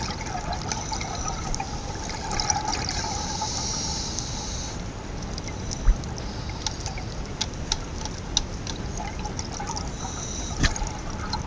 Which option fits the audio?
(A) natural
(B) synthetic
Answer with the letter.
A